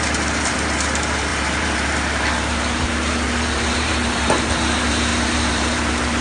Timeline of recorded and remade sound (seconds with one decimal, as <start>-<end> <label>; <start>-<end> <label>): 0.0-6.2 remade